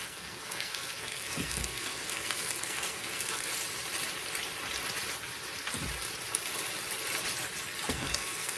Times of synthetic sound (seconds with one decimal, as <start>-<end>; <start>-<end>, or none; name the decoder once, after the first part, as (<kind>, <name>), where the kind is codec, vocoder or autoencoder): 0.0-3.5 (codec, SNAC); 7.9-8.6